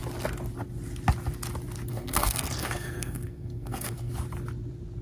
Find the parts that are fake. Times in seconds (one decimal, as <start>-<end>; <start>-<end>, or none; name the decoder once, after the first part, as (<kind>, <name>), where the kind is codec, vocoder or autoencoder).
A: 1.9-4.1 (codec, SNAC)